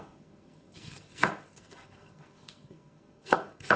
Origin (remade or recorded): remade